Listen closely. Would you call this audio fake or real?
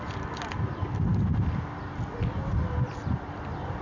real